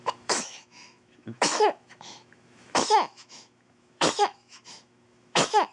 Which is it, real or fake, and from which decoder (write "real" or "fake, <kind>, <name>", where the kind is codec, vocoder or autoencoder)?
fake, autoencoder, DAC-VAE